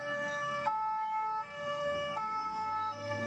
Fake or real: fake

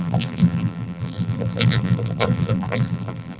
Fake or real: fake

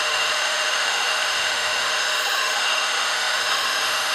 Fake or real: fake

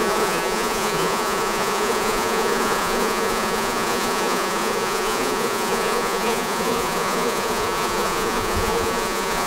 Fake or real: fake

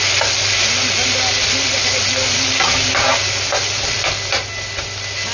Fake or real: real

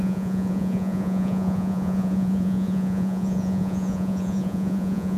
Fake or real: fake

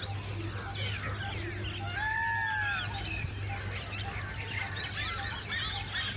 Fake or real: real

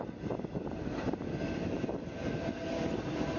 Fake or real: real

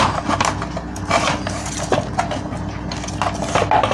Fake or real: real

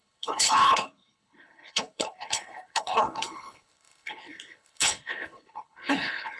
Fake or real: fake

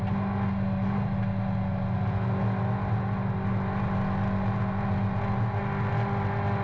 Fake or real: real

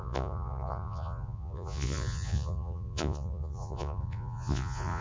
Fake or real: fake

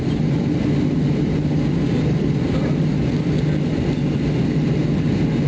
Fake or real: real